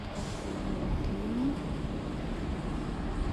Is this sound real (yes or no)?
yes